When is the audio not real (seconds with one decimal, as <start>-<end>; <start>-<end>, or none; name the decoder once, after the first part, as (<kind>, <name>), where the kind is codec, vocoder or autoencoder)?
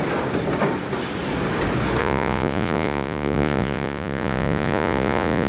2.0-5.5 (vocoder, Vocos)